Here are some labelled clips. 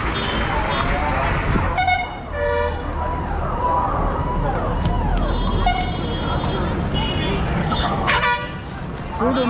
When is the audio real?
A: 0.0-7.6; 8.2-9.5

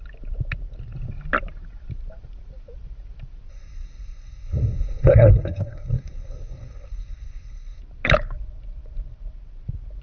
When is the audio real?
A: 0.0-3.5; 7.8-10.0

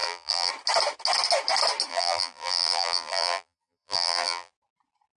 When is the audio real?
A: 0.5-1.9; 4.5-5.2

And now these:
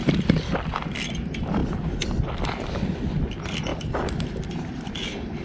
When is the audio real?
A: 0.0-5.4

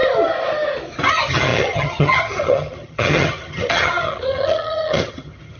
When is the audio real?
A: 0.0-1.1

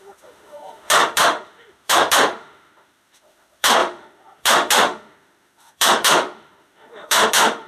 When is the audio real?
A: none

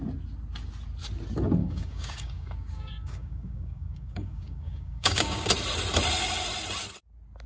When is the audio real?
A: 0.0-1.6; 5.5-7.5

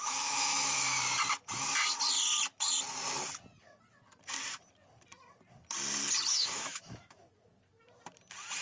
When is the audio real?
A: 1.0-6.3; 7.2-8.6